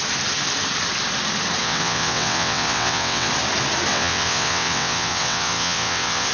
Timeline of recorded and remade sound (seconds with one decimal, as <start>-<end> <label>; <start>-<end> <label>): 0.0-1.6 recorded; 1.6-3.3 remade; 3.3-3.9 recorded; 3.9-6.3 remade